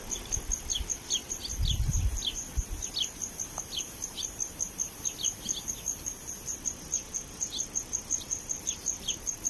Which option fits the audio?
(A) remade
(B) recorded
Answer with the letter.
A